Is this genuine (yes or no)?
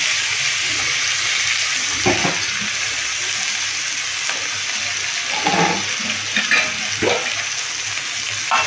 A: yes